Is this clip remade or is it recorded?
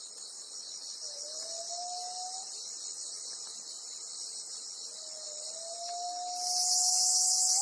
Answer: recorded